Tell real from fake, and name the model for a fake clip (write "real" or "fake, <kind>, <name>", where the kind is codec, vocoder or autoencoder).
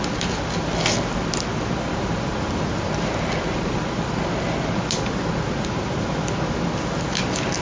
real